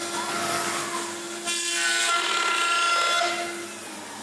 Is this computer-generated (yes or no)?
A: no